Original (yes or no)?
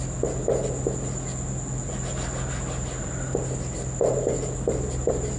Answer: yes